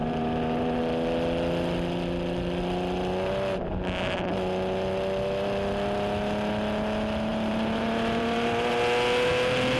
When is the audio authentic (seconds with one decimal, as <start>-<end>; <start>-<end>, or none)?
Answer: 0.8-7.3; 8.8-9.8